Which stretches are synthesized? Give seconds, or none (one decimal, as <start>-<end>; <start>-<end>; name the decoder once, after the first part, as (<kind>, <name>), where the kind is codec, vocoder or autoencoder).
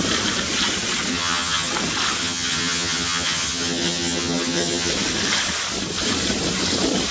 1.1-1.7 (vocoder, HiFi-GAN); 2.2-4.9